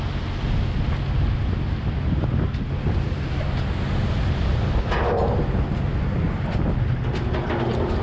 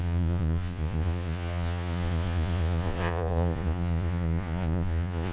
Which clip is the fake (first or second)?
second